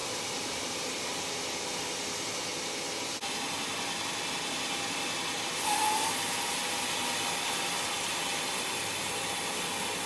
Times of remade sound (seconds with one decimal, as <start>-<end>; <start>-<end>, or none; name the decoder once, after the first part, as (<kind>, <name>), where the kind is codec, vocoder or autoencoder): 0.0-1.3 (vocoder, BigVGAN v2)